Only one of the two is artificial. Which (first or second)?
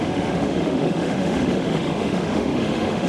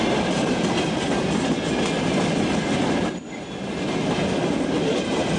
first